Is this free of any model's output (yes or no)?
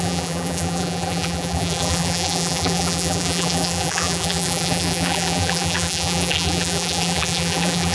no